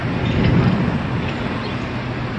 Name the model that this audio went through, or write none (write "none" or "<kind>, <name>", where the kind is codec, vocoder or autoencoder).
none